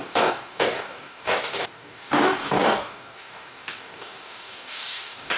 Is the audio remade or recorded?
remade